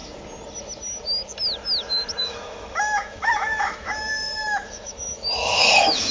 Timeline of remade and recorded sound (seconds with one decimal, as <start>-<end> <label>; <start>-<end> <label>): 0.0-2.2 recorded; 2.2-6.1 remade